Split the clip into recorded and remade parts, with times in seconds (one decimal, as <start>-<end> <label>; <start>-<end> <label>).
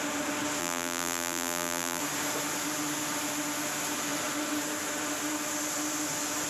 0.0-0.6 recorded; 0.6-2.0 remade; 2.0-6.5 recorded